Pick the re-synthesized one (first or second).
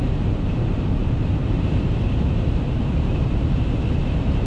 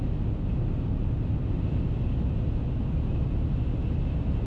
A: first